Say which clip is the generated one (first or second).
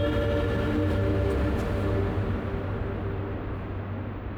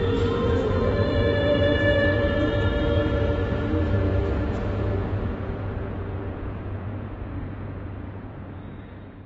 second